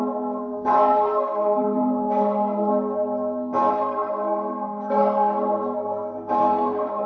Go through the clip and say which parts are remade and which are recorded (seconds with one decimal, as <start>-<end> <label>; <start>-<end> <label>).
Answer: 0.0-2.7 remade; 2.7-3.7 recorded; 3.7-7.1 remade

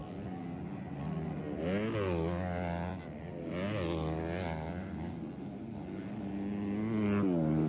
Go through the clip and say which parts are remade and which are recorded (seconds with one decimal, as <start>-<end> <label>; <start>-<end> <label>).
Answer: 0.0-7.7 recorded

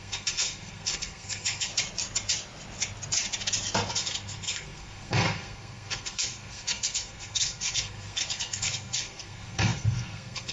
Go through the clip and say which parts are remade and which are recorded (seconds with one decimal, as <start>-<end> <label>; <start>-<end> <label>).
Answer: 0.0-1.7 remade; 1.7-3.9 recorded; 3.9-10.5 remade

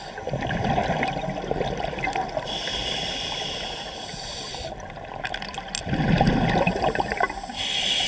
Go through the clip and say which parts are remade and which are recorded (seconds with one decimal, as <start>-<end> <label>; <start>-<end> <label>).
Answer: 0.0-8.1 recorded

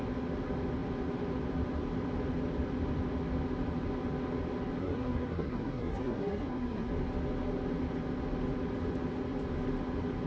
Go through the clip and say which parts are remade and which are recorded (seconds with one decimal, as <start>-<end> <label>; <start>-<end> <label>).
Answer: 0.0-4.8 recorded; 4.8-6.9 remade; 6.9-10.3 recorded